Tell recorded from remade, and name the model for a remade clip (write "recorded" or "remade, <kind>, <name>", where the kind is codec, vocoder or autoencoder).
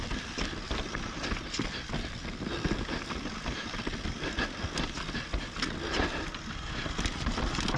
recorded